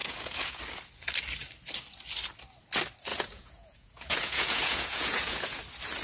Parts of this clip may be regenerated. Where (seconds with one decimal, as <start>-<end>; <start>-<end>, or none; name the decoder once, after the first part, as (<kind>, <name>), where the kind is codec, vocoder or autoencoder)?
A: 0.0-0.6 (vocoder, Vocos); 3.1-5.6